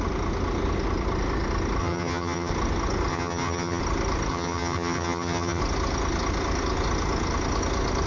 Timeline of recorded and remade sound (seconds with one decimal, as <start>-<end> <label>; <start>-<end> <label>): 0.0-1.8 recorded; 1.8-2.5 remade; 2.5-3.1 recorded; 3.1-3.8 remade; 3.8-4.3 recorded; 4.3-5.6 remade; 5.6-8.1 recorded